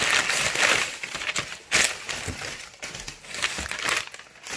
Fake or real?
fake